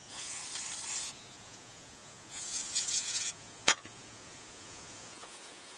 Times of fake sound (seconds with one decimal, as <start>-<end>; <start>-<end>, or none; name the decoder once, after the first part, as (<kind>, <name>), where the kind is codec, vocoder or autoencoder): 0.0-0.4 (vocoder, Vocos); 1.0-5.8